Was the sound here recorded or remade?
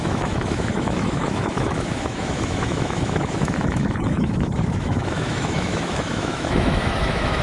remade